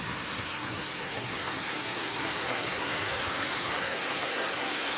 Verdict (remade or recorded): remade